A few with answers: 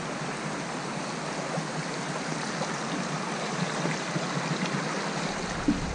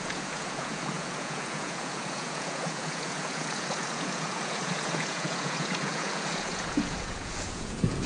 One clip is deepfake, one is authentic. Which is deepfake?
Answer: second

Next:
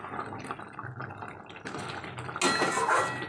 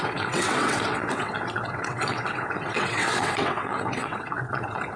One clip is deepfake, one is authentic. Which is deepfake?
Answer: second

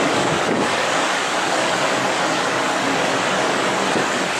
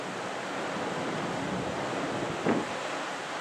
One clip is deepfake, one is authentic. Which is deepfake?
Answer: first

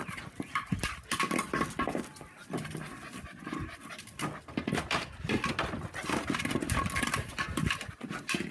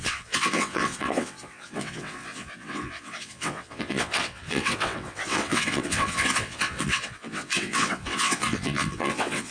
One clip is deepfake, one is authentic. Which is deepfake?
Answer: second